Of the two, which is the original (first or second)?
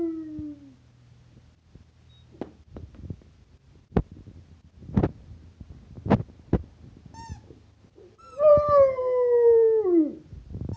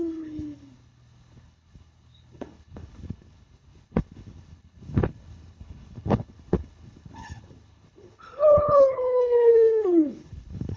first